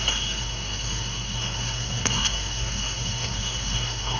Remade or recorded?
remade